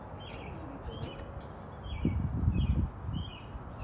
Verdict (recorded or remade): recorded